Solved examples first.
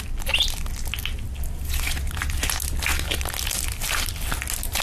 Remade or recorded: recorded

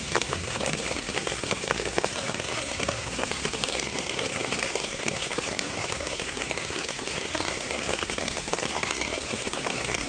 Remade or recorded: remade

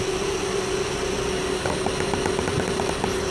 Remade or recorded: recorded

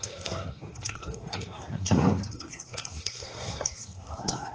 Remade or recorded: remade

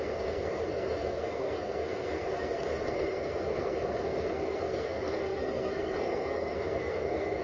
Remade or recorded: remade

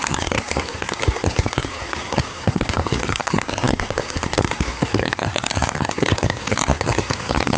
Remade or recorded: remade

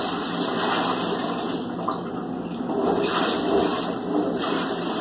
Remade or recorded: recorded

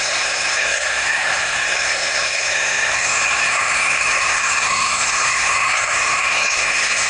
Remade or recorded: remade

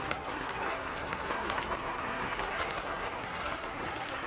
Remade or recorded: remade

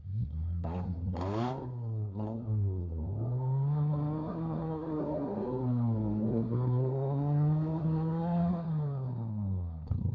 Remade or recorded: remade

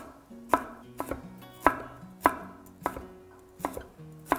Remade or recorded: recorded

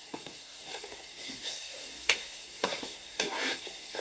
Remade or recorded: remade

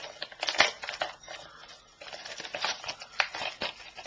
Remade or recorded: recorded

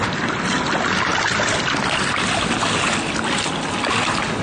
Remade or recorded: recorded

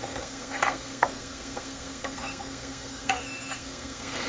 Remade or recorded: remade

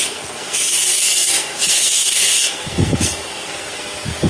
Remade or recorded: remade